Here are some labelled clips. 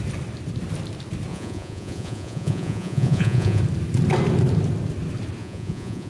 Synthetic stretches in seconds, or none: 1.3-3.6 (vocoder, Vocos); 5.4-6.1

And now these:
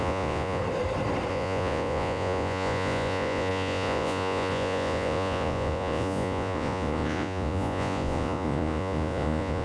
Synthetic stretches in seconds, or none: 0.0-0.6 (vocoder, Vocos); 1.3-9.6